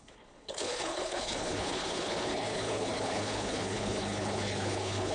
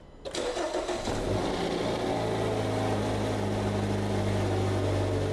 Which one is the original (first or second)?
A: second